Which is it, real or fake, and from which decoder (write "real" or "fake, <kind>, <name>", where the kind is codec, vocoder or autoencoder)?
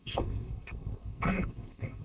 fake, codec, SNAC